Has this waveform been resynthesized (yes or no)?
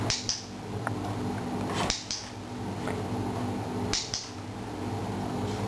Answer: no